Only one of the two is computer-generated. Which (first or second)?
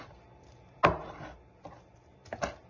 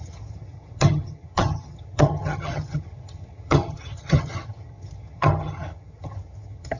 second